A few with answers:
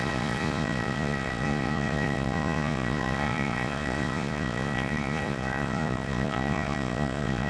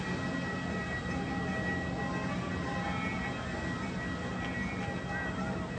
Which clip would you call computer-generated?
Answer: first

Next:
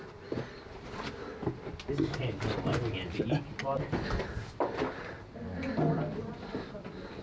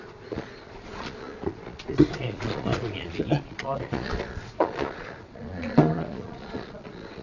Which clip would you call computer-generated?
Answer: second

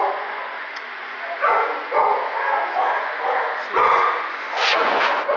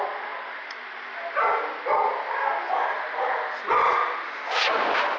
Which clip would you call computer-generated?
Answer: first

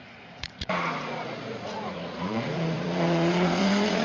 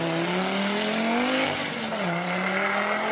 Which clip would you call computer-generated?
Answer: first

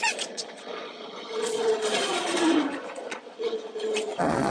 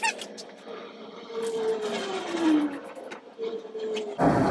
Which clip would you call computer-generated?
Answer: first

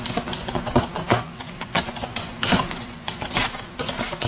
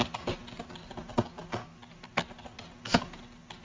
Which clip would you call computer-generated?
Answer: first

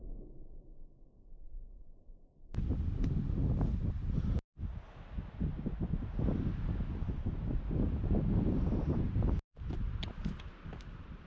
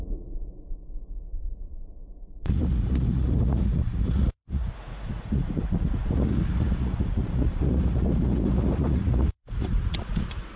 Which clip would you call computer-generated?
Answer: second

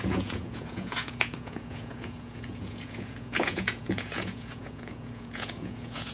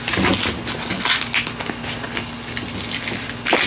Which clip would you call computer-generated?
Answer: first